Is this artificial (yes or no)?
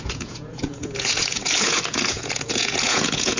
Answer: yes